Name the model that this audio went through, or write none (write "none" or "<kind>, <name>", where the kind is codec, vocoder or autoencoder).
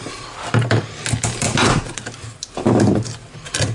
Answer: none